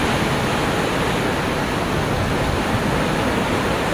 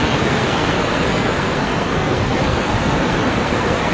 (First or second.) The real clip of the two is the first